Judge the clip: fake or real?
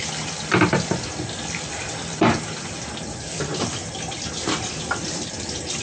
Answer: real